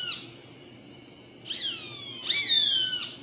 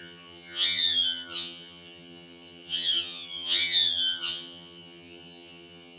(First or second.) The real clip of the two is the first